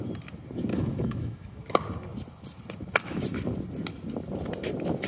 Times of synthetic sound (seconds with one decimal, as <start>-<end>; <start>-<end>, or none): 0.7-1.6